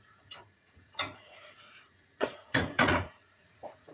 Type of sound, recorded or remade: remade